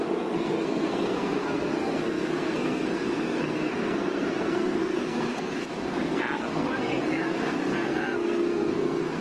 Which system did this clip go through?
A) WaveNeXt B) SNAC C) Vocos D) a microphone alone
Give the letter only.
B